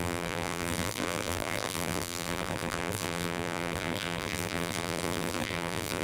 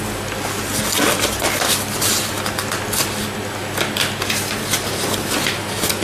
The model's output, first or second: first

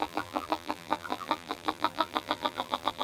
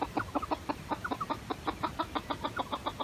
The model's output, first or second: first